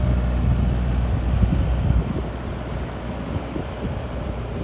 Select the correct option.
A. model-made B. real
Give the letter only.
B